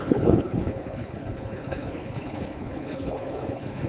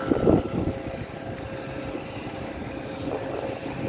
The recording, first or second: second